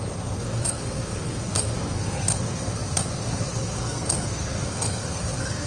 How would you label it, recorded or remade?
remade